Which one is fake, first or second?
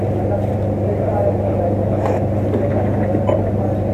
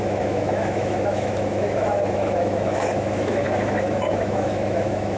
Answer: second